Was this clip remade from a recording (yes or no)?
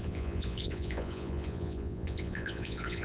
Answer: yes